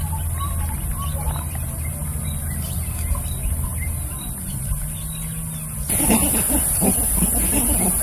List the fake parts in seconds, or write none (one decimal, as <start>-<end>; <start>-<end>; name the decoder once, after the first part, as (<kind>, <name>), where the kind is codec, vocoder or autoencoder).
none